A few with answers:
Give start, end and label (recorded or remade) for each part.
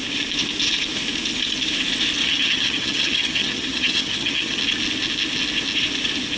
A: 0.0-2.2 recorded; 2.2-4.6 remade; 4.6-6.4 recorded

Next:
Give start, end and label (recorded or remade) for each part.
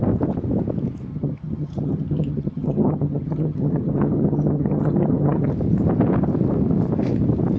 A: 0.0-1.1 recorded; 1.1-5.5 remade; 5.5-7.6 recorded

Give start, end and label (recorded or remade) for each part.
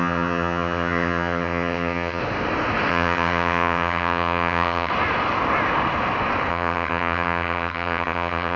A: 0.0-2.2 remade; 2.2-2.9 recorded; 2.9-4.9 remade; 4.9-6.5 recorded; 6.5-8.6 remade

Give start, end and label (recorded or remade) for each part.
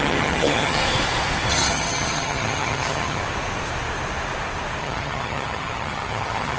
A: 0.0-0.8 remade; 0.8-1.5 recorded; 1.5-3.2 remade; 3.2-4.8 recorded; 4.8-6.6 remade